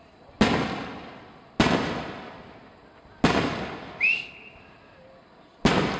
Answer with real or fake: real